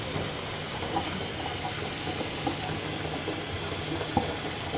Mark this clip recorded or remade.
recorded